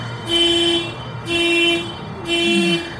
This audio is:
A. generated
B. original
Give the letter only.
A